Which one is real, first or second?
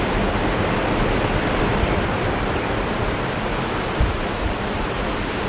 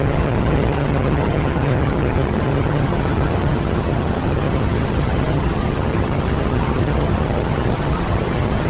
first